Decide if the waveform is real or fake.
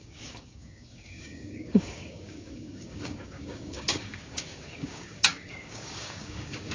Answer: fake